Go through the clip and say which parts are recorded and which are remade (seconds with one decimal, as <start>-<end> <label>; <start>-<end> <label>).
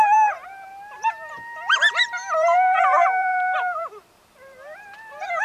0.0-0.7 remade; 0.7-2.0 recorded; 2.0-5.4 remade